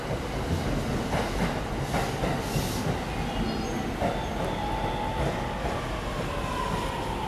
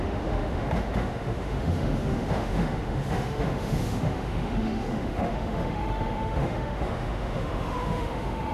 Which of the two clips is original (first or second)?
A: first